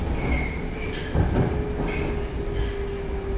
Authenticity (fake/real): real